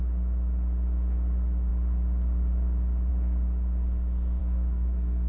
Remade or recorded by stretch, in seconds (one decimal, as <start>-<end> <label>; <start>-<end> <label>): 0.0-4.4 recorded; 4.4-5.3 remade